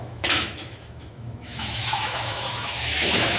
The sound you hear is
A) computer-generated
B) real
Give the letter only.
A